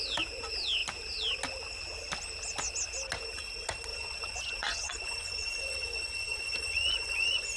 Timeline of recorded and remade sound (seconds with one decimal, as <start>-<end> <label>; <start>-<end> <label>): 0.0-3.9 recorded; 3.9-7.6 remade